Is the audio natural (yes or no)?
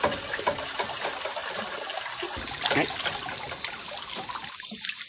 yes